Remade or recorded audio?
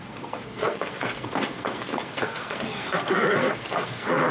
remade